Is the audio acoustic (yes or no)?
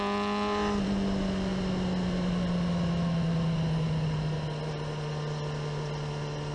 yes